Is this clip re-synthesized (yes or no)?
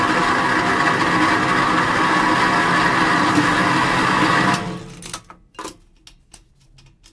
no